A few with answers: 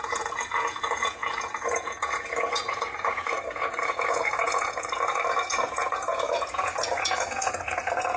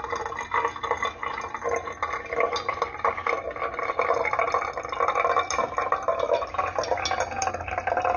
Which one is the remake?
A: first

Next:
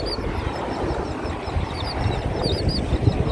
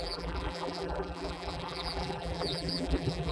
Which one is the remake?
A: second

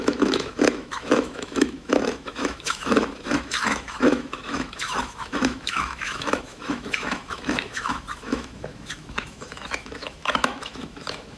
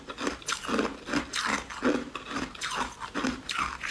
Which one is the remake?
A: first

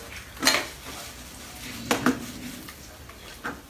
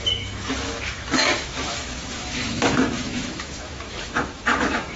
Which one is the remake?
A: second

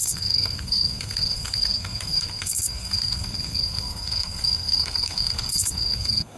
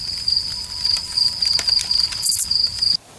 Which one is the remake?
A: first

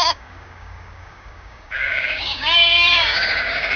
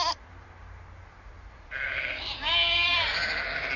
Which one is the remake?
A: first